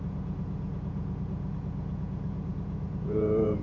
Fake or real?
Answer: fake